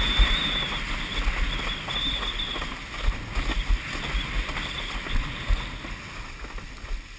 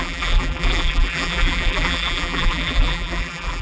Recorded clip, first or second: first